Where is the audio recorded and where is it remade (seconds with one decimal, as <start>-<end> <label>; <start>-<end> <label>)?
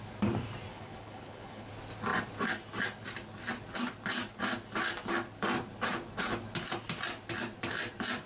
0.0-0.7 recorded; 0.7-1.7 remade; 1.7-8.3 recorded